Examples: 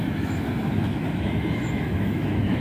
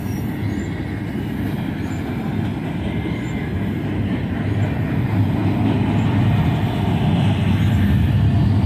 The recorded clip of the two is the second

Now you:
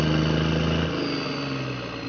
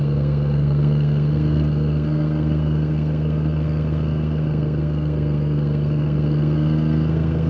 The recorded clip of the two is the first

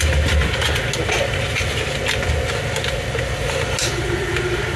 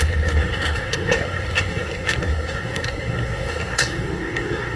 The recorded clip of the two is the first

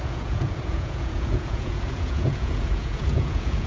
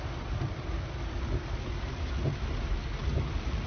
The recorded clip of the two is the second